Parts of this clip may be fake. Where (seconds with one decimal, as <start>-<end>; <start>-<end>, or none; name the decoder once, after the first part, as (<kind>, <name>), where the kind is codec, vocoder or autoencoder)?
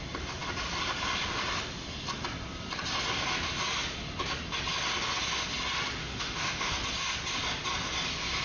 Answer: 6.0-6.7 (autoencoder, DAC-VAE)